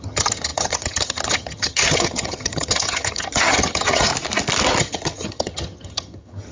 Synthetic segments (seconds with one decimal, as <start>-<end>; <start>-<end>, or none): 0.0-4.1; 4.8-6.5